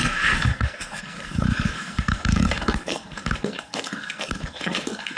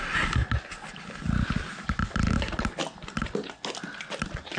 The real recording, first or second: second